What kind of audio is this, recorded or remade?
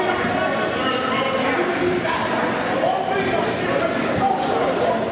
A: recorded